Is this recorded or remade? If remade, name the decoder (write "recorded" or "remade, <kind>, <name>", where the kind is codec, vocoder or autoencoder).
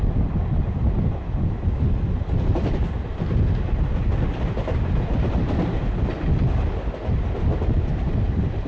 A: recorded